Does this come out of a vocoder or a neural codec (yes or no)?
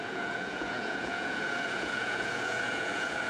yes